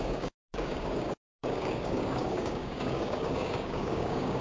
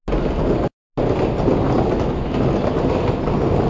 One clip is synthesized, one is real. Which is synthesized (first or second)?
first